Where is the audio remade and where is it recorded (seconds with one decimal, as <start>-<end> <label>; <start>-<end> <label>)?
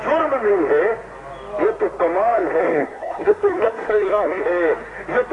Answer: 0.0-2.6 recorded; 2.6-4.4 remade; 4.4-5.3 recorded